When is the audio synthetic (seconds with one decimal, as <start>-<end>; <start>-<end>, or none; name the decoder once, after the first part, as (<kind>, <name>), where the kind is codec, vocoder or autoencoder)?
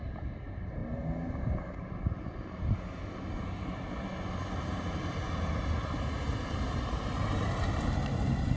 0.0-0.8 (vocoder, BigVGAN v2); 5.4-8.6